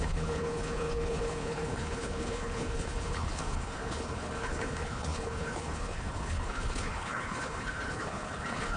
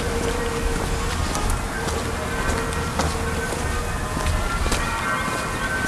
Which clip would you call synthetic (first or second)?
first